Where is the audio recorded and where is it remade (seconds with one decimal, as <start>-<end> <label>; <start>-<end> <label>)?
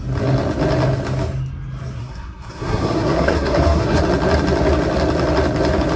0.0-2.0 recorded; 2.0-4.0 remade; 4.0-6.0 recorded